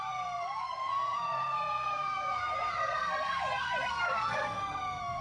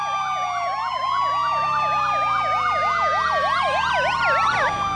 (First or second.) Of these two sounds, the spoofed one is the first